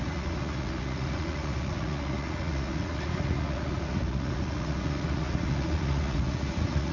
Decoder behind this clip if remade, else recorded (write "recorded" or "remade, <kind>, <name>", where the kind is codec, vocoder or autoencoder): remade, vocoder, Vocos